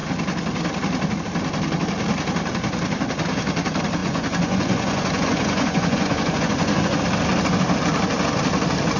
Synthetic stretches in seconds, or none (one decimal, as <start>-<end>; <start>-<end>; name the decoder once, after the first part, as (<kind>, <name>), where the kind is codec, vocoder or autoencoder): 4.0-7.0 (vocoder, Vocos)